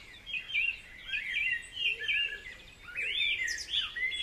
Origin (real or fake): real